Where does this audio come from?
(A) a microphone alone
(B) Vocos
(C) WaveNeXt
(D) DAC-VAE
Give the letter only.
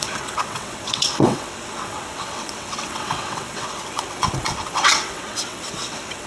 C